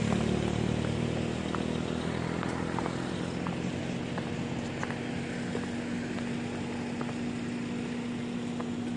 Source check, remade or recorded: recorded